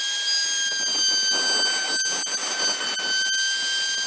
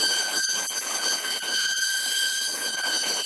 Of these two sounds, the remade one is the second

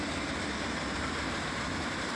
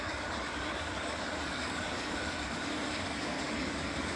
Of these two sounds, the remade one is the second